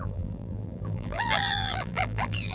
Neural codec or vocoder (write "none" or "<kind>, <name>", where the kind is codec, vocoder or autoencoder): vocoder, BigVGAN v2